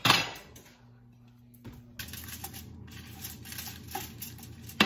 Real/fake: real